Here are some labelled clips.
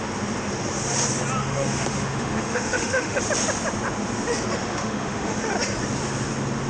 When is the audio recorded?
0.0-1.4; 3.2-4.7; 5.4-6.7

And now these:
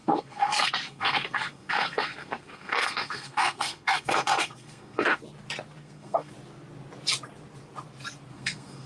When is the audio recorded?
5.2-5.8; 6.3-8.3

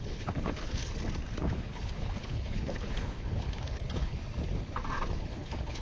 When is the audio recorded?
0.9-1.4; 4.2-5.1

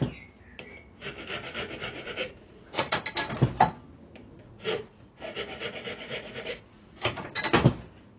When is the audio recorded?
0.0-1.8; 3.0-4.3; 5.2-6.1; 7.4-8.2

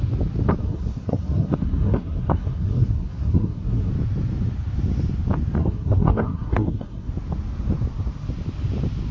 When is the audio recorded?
0.0-0.6; 3.9-5.6; 7.1-9.1

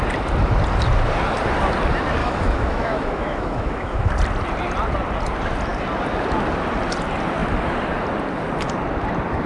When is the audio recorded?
0.0-2.2; 4.1-9.5

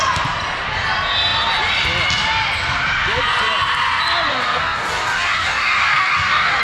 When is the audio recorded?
0.0-4.3

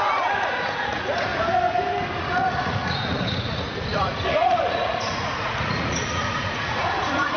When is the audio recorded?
1.3-2.2